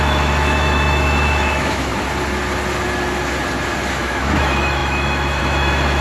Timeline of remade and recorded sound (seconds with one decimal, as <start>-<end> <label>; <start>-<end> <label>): 0.0-1.9 remade; 1.9-3.9 recorded; 3.9-6.0 remade